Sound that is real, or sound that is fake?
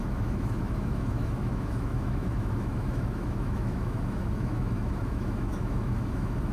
fake